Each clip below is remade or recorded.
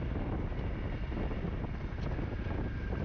recorded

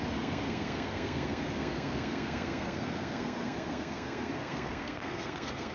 remade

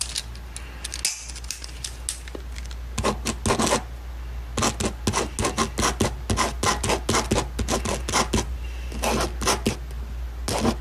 recorded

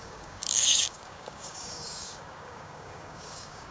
remade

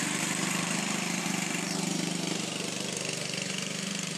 remade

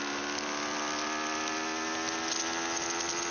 recorded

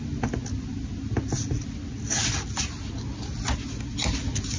recorded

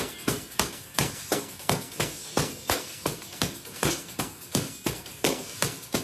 remade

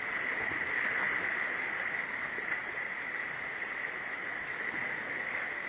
recorded